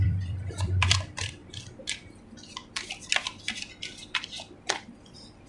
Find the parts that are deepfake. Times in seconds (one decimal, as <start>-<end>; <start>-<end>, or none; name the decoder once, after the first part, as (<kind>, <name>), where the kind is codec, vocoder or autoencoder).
0.0-1.4 (vocoder, BigVGAN v2); 4.2-5.5